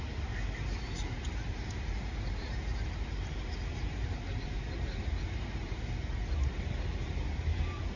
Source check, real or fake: fake